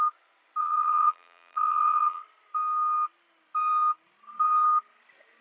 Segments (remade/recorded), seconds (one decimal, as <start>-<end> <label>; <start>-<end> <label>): 0.0-0.6 recorded; 0.6-2.2 remade; 2.2-5.4 recorded